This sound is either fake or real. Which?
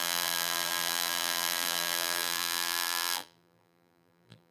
fake